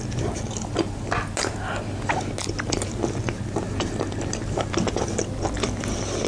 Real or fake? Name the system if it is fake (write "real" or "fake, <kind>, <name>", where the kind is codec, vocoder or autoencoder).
real